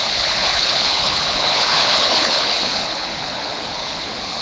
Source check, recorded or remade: remade